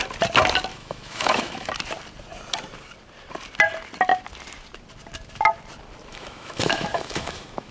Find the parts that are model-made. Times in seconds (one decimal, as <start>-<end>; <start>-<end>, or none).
0.7-1.7; 6.1-7.7